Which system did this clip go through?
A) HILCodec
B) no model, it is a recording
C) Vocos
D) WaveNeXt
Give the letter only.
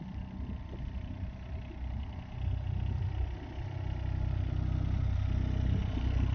B